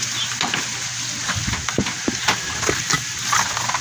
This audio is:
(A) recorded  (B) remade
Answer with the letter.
A